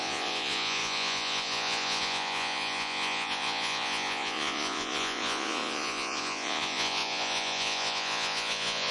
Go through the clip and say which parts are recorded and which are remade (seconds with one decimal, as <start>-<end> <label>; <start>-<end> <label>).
0.0-8.9 remade